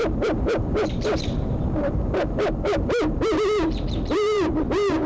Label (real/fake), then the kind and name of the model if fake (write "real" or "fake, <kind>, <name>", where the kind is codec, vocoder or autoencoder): fake, vocoder, BigVGAN v2